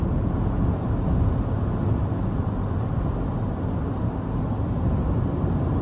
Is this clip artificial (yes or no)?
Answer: no